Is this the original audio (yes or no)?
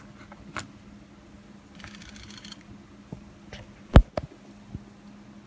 yes